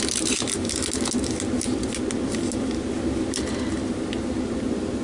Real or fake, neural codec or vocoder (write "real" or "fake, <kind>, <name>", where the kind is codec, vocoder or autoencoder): real